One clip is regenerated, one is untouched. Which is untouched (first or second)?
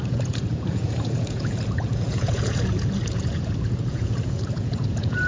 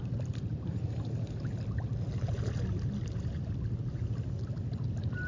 second